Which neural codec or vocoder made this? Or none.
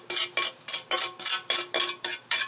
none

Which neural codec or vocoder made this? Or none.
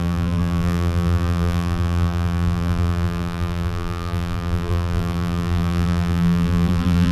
vocoder, BigVGAN v2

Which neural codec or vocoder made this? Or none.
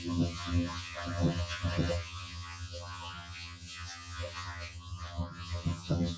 vocoder, HiFi-GAN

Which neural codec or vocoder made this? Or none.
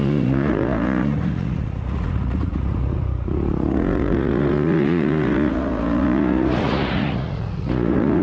vocoder, Vocos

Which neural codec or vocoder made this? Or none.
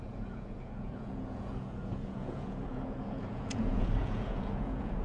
vocoder, Vocos